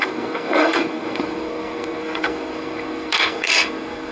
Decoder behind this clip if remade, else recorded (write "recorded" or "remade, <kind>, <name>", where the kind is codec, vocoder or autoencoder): remade, codec, SNAC